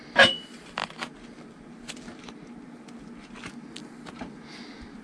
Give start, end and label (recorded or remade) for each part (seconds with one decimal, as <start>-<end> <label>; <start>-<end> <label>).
0.0-5.0 recorded